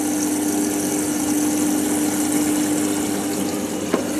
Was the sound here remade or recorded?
recorded